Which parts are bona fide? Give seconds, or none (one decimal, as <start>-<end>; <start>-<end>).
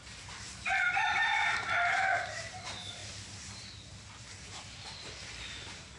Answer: 3.0-4.2